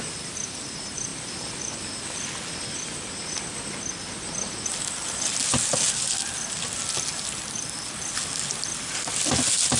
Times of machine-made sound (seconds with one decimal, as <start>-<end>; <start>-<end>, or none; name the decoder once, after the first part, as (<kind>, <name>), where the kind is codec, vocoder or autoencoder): none